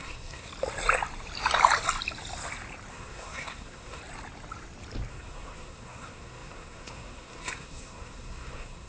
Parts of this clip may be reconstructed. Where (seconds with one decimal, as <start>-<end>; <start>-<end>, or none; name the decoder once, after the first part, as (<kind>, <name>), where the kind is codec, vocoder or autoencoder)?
0.0-0.5 (codec, SNAC); 2.9-4.0; 5.1-8.9